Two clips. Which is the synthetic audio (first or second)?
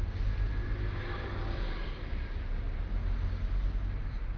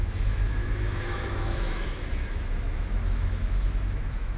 second